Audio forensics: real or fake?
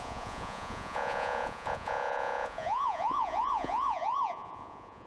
fake